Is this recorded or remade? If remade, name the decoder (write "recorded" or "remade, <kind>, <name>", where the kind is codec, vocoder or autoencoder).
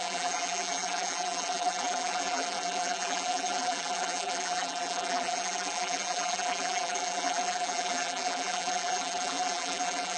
remade, vocoder, BigVGAN v2